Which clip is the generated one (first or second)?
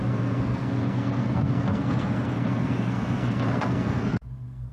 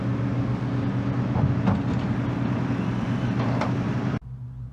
first